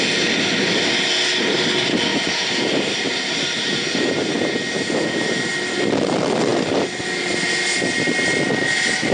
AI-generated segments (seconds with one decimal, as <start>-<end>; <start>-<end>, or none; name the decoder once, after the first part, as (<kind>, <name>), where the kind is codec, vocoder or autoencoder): 2.1-5.5 (vocoder, BigVGAN v2)